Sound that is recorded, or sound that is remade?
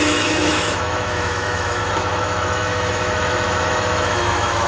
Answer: remade